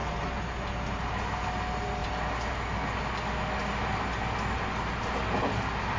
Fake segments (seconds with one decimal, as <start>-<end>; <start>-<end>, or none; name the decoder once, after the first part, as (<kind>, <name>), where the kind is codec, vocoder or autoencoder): none